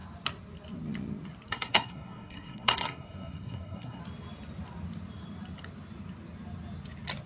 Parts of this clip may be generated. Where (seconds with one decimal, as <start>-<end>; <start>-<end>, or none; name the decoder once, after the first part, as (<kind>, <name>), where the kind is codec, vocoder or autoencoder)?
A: 1.5-4.0 (codec, SNAC)